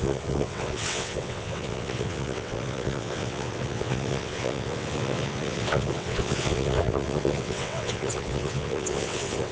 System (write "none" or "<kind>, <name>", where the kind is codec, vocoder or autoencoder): vocoder, WaveNeXt